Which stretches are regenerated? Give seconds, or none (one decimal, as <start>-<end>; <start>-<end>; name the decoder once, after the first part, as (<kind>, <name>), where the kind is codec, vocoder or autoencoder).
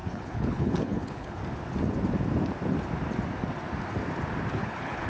0.0-1.4 (codec, HILCodec); 4.5-5.1